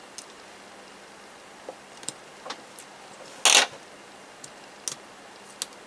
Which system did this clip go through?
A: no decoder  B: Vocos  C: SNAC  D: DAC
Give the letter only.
A